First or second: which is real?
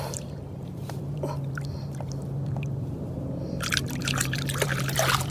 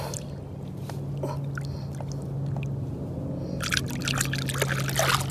second